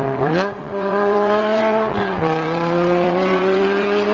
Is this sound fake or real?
fake